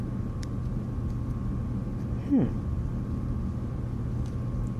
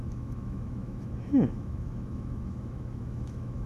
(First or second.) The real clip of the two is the first